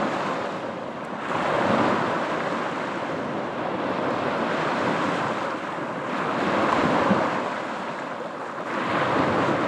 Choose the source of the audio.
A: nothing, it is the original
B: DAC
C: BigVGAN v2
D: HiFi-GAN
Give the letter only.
A